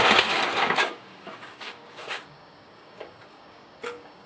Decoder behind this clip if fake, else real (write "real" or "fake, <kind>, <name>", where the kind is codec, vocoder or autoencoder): fake, codec, DAC